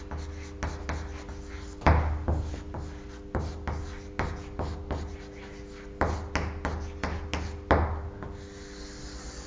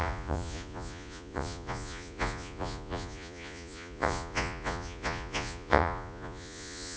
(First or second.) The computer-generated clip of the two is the second